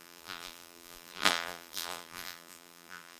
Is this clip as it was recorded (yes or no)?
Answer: no